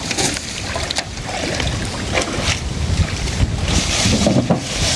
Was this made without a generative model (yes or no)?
yes